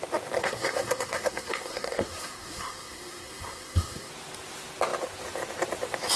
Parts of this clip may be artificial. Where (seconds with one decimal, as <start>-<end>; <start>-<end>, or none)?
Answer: 0.4-4.1